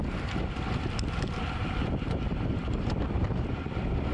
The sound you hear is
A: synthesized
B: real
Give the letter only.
B